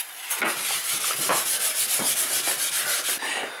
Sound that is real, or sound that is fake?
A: real